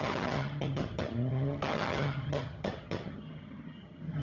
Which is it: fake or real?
fake